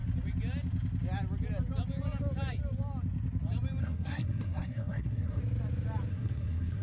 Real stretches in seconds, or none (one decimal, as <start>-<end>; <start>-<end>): 0.0-3.8; 5.4-6.1